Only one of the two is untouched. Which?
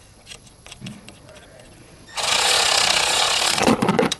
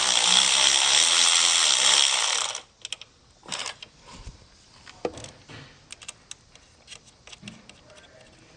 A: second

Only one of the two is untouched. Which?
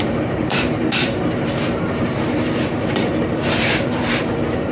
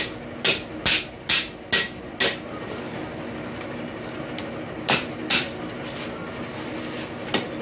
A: second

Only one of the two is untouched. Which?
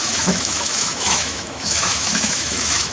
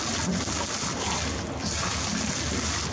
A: second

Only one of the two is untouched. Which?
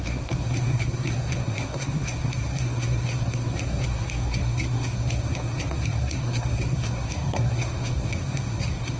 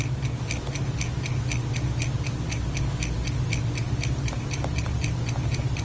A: second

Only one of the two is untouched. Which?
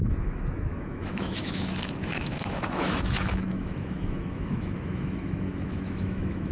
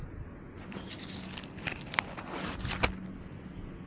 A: second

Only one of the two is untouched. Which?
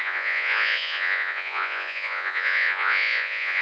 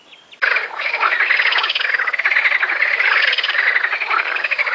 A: second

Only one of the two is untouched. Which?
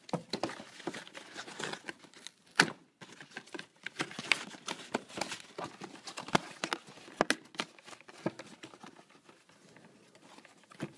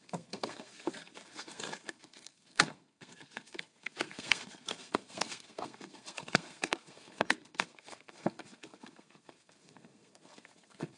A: first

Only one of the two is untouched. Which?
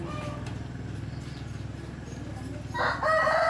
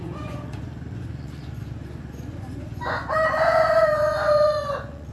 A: first